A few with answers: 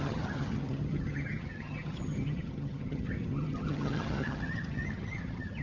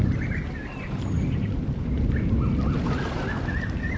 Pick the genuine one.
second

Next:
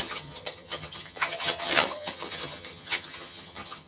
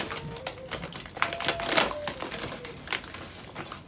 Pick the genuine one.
second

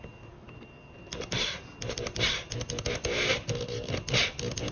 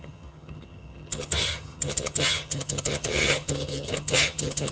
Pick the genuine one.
first